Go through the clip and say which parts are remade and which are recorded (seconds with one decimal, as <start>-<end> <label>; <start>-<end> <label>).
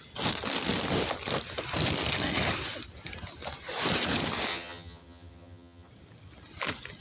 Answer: 0.0-4.5 recorded; 4.5-5.9 remade; 5.9-7.0 recorded